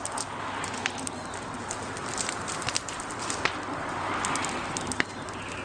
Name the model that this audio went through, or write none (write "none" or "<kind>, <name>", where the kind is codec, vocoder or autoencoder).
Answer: none